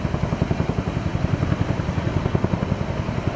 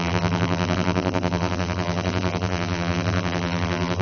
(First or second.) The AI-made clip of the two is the second